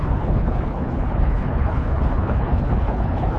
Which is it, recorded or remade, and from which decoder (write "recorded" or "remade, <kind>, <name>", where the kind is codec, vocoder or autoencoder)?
remade, codec, HILCodec